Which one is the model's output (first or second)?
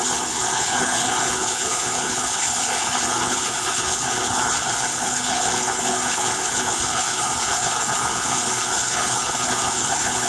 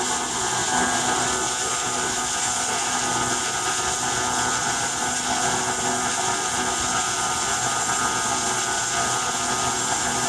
first